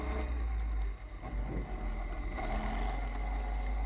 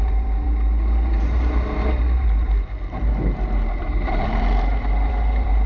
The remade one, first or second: second